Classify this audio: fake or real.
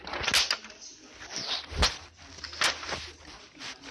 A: real